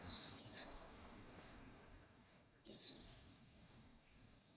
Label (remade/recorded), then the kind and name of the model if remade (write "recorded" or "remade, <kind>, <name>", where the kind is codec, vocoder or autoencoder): remade, codec, DAC